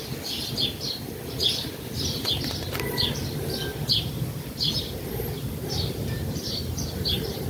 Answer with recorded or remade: recorded